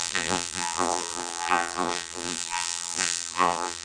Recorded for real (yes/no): no